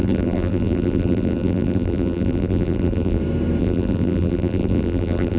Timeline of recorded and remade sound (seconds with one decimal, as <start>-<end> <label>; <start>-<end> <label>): 0.0-3.2 remade; 3.2-3.6 recorded; 3.6-5.4 remade